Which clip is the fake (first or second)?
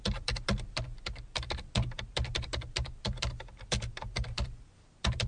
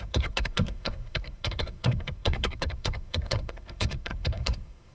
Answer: second